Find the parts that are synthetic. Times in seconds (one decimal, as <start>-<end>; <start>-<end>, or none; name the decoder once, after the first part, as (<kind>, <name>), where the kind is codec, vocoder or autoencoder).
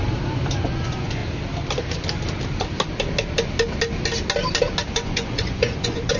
0.6-1.2 (vocoder, Vocos); 4.9-6.2